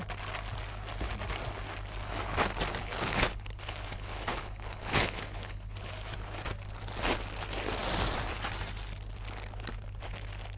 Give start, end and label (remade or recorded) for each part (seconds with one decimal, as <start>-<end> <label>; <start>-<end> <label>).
0.0-2.8 recorded; 2.8-5.9 remade; 5.9-10.6 recorded